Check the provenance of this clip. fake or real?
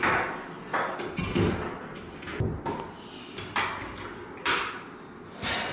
real